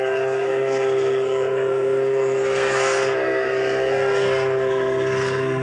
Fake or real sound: fake